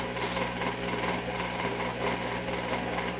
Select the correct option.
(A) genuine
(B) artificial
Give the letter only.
A